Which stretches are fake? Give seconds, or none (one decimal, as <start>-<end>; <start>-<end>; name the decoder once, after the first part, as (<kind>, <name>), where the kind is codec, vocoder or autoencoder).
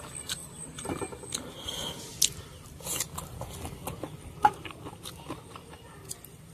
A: none